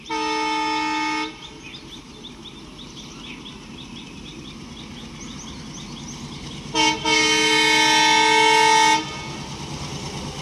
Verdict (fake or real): real